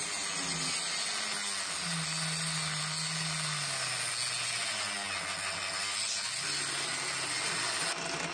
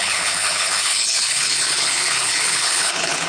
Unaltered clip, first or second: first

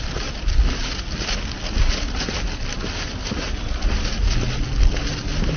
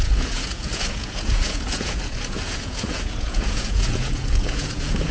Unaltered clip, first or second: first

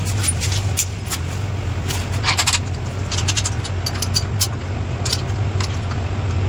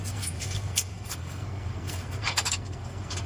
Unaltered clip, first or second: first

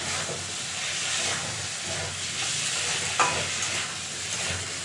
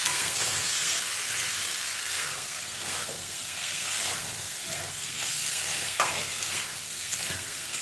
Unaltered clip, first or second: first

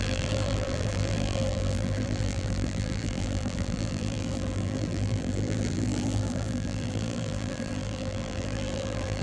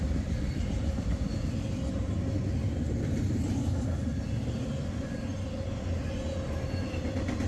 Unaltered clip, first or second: second